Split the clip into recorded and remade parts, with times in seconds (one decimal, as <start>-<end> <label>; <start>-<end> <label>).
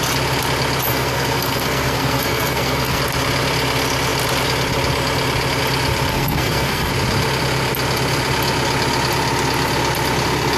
0.0-0.9 recorded; 0.9-3.0 remade; 3.0-6.1 recorded; 6.1-6.9 remade; 6.9-10.6 recorded